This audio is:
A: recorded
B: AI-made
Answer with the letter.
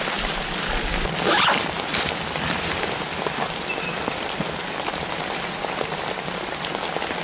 A